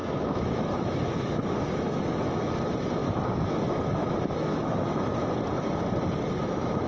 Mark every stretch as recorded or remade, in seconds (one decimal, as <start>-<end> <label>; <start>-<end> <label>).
0.0-2.5 remade; 2.5-3.0 recorded; 3.0-5.1 remade; 5.1-6.4 recorded; 6.4-6.9 remade